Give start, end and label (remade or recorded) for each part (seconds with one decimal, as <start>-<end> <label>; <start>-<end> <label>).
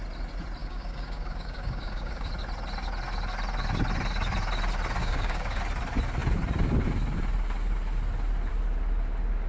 0.0-0.6 recorded; 0.6-2.3 remade; 2.3-5.0 recorded; 5.0-5.6 remade; 5.6-9.5 recorded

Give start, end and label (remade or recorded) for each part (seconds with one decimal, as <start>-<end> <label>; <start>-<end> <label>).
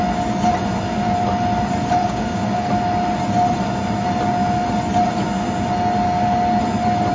0.0-2.0 recorded; 2.0-2.7 remade; 2.7-7.1 recorded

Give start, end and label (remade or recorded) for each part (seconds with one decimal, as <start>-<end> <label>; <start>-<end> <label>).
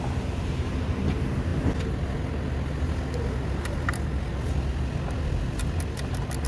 0.0-6.5 recorded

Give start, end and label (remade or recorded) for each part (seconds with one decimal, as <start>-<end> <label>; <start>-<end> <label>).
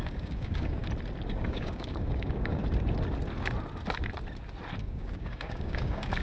0.0-0.8 remade; 0.8-1.3 recorded; 1.3-2.6 remade; 2.6-4.8 recorded; 4.8-6.2 remade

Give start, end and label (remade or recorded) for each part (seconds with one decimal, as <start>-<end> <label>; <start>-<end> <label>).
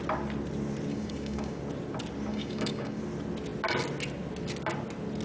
0.0-0.9 recorded; 0.9-1.6 remade; 1.6-2.3 recorded; 2.3-3.0 remade; 3.0-5.2 recorded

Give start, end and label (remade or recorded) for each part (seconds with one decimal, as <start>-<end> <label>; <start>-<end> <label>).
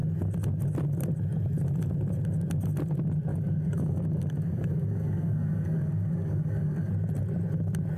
0.0-3.3 recorded; 3.3-6.9 remade; 6.9-8.0 recorded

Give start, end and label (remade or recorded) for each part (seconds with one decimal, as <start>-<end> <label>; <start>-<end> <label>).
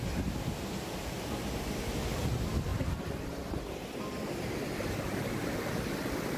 0.0-6.4 recorded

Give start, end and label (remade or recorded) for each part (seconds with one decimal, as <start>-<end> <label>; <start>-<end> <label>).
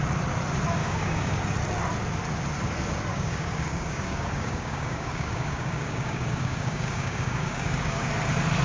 0.0-0.8 recorded; 0.8-1.4 remade; 1.4-3.1 recorded; 3.1-8.1 remade; 8.1-8.6 recorded